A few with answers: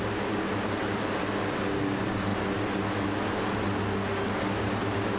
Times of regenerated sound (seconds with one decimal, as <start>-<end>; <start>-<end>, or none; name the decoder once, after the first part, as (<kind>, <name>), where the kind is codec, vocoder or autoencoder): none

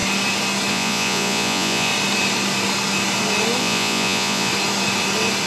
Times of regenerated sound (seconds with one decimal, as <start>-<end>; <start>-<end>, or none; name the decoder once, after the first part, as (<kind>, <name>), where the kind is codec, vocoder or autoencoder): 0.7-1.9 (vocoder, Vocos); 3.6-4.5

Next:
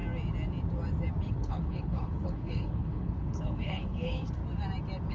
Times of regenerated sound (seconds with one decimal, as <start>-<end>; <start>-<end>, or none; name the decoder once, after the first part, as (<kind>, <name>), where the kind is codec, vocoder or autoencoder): 1.3-4.4 (codec, HILCodec)